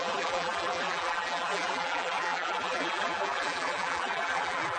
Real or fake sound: fake